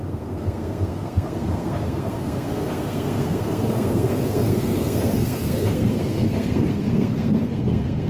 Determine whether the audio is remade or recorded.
remade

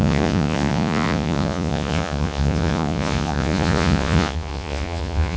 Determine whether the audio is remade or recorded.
remade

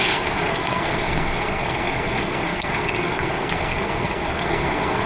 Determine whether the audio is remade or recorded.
remade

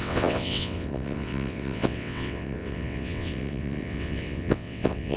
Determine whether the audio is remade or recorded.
remade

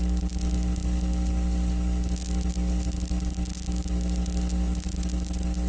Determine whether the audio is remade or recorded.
recorded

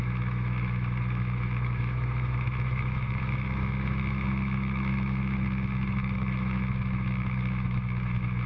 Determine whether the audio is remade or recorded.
remade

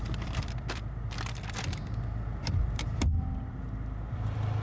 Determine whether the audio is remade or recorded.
remade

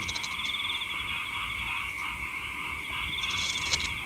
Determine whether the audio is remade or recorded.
recorded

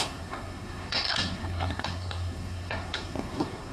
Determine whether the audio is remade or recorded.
remade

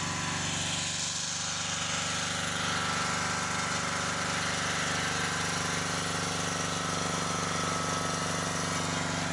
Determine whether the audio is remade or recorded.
recorded